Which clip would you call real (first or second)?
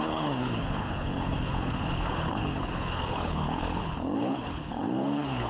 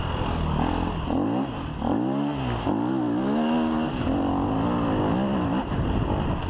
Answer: second